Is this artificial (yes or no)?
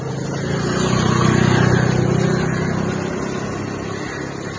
no